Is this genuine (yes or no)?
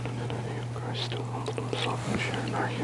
yes